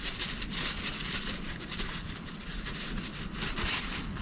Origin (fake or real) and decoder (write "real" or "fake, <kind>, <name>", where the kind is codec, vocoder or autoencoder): real